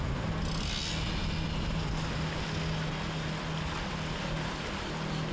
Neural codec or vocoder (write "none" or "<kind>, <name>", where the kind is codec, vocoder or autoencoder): none